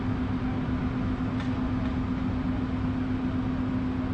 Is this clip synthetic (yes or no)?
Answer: no